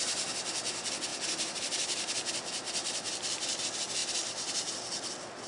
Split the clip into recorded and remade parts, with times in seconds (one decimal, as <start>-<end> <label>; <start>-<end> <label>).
0.0-1.1 recorded; 1.1-3.6 remade; 3.6-4.0 recorded; 4.0-4.7 remade; 4.7-5.5 recorded